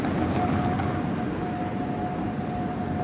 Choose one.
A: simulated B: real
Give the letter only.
B